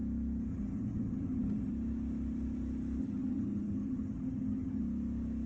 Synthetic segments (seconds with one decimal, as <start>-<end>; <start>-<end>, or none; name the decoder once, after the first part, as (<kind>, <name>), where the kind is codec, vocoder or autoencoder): 0.5-1.7 (vocoder, HiFi-GAN); 3.0-4.8